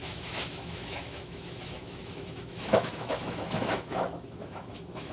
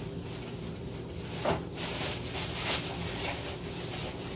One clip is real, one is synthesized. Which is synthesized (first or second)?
first